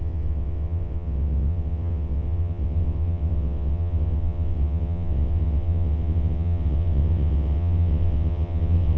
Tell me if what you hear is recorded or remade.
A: remade